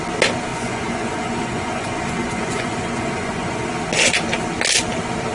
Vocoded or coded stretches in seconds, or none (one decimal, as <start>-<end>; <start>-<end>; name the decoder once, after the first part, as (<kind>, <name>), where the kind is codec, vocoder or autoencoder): 0.5-3.7 (vocoder, Vocos)